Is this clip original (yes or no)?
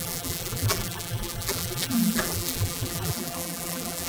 no